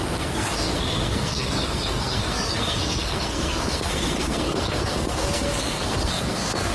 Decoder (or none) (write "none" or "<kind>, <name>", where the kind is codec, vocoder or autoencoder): codec, SNAC